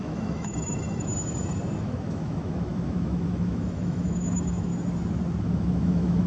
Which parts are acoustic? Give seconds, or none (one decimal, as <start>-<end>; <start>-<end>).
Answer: 1.1-1.8; 4.7-5.4